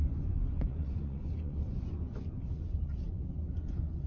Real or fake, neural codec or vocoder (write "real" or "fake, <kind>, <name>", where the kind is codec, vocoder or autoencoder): fake, vocoder, Vocos